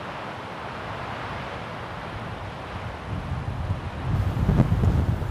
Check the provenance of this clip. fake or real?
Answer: real